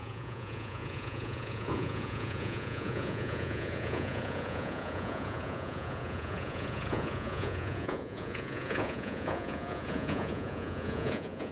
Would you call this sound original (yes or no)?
no